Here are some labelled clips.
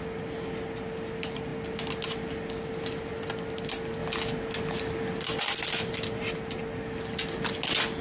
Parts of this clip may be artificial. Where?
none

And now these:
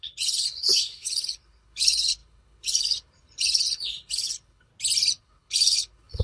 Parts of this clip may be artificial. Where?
0.0-4.7; 5.2-6.2